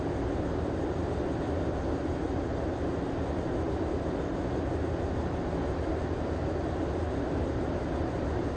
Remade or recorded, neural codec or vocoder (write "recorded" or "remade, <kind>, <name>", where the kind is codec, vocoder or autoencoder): recorded